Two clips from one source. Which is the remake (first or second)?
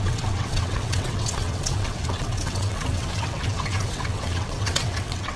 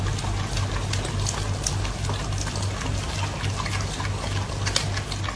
first